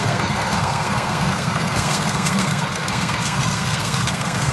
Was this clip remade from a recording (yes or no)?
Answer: yes